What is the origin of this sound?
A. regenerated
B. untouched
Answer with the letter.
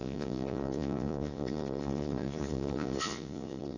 A